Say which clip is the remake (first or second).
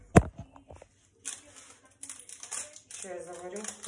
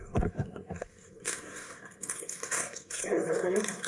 second